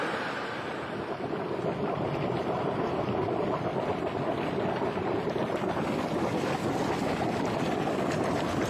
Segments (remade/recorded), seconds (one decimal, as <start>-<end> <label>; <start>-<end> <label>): 0.0-8.7 recorded